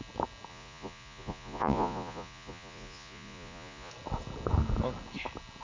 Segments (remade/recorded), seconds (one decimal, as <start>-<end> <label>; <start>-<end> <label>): 0.0-0.5 recorded; 0.5-3.9 remade; 3.9-5.6 recorded